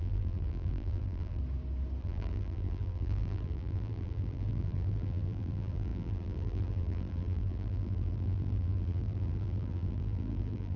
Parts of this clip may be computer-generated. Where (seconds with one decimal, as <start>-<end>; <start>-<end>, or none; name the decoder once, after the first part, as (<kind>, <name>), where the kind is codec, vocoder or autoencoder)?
0.0-1.4 (vocoder, BigVGAN v2); 2.0-10.8

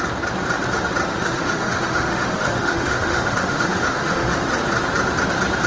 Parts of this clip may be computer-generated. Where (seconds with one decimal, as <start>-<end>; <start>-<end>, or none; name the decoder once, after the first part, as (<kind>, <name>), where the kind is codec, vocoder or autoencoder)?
1.1-4.5 (autoencoder, DAC-VAE)

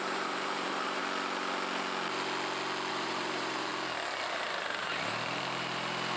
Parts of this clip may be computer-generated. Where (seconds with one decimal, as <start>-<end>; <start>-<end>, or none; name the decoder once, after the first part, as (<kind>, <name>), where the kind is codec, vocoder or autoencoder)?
0.0-1.0 (vocoder, BigVGAN v2); 2.9-3.7; 4.8-6.2

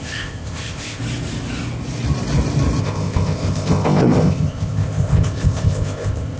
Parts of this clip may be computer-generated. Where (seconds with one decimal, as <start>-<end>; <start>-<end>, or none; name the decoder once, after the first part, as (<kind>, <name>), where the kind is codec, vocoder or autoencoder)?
0.0-1.0 (codec, ZipCodec); 2.8-6.4

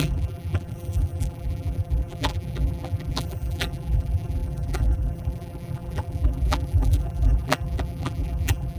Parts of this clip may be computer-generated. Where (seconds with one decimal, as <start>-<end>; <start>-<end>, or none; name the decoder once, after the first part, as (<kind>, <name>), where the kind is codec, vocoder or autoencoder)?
0.0-8.8 (vocoder, BigVGAN v2)